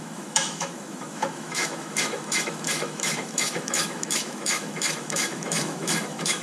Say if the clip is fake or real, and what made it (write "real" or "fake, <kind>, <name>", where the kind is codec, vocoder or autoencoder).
fake, autoencoder, DAC-VAE